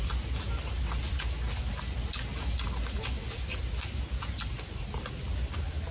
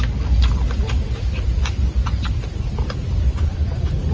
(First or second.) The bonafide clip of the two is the first